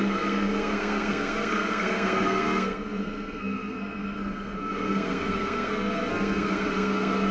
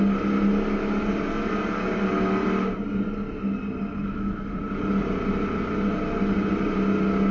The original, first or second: second